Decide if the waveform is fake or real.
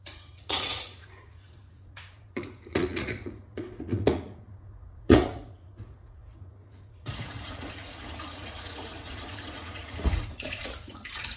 fake